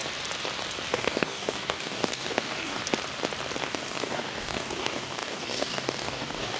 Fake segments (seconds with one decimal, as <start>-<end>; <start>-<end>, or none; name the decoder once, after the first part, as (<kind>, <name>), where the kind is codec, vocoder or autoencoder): 0.9-2.8 (codec, DAC); 3.7-6.6